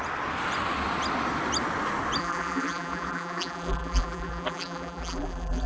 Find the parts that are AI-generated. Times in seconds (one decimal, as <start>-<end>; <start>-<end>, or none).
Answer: 2.2-5.7